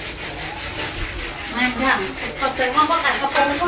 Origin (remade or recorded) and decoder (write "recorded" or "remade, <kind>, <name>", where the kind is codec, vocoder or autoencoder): recorded